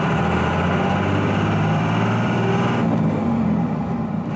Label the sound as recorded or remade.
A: remade